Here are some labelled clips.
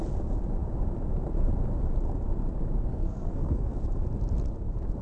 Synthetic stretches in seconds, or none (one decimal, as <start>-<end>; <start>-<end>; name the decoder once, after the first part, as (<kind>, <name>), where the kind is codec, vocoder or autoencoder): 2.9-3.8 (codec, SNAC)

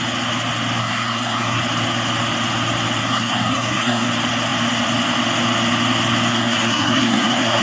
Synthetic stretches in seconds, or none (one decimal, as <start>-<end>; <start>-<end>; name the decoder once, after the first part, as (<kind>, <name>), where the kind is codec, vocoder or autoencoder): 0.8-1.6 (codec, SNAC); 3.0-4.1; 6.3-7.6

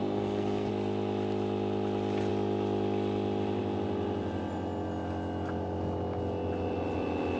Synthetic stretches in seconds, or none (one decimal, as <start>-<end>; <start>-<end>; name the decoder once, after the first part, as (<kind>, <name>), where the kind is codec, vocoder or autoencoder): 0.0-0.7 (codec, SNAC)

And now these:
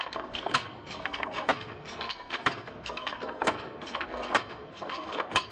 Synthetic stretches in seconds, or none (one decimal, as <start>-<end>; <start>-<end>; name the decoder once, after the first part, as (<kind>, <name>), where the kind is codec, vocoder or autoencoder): 0.0-5.5 (codec, SNAC)

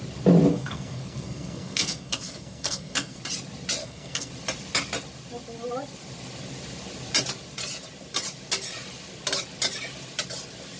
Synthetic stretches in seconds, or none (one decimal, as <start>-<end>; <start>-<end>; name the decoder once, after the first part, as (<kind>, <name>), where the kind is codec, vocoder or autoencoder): 0.5-3.2 (codec, SNAC); 3.8-4.3